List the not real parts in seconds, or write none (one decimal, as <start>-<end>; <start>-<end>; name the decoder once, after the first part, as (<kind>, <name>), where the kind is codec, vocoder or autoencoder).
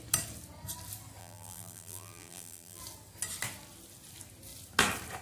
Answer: 1.2-2.8 (vocoder, BigVGAN v2)